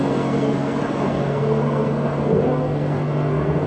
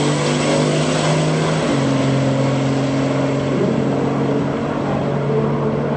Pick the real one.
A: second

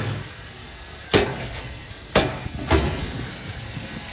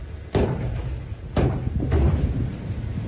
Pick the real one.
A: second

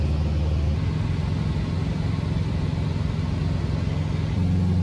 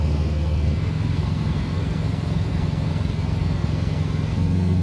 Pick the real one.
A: first